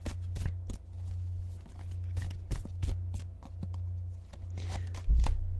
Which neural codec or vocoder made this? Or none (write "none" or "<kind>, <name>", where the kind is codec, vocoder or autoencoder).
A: none